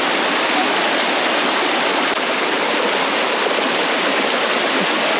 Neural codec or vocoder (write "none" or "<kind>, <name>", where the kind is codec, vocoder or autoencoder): none